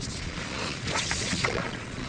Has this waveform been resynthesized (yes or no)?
yes